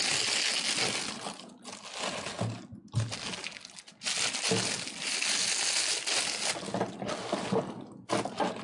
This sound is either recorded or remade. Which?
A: recorded